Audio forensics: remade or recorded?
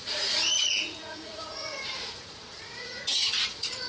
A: remade